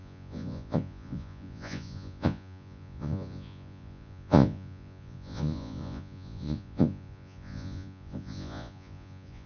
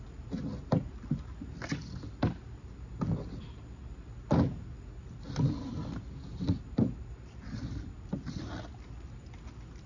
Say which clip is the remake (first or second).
first